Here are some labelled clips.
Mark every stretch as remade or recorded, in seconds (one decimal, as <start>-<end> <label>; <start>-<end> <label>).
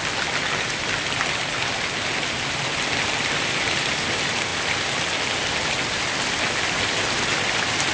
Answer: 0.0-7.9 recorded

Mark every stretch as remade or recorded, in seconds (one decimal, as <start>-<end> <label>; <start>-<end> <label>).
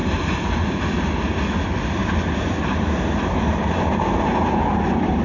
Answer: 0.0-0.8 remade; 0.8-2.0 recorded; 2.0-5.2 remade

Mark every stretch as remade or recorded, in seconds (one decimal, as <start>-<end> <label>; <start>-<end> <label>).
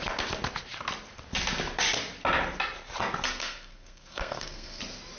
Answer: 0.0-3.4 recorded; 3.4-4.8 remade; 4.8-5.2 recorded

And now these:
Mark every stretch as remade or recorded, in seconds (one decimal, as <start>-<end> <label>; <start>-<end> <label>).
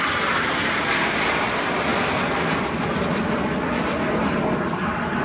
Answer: 0.0-5.2 recorded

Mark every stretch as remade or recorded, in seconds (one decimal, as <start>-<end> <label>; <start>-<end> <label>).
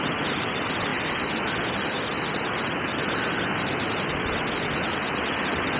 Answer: 0.0-5.8 recorded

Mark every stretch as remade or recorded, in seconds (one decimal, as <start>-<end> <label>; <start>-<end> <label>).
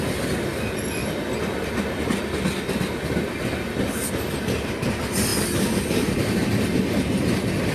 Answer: 0.0-7.7 recorded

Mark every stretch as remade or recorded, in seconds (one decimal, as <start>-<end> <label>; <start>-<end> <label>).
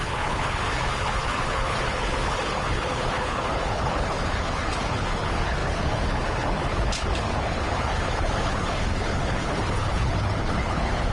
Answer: 0.0-11.1 remade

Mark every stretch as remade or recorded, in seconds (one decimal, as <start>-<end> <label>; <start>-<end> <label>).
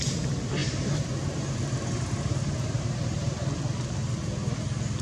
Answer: 0.0-0.6 recorded; 0.6-3.6 remade; 3.6-5.0 recorded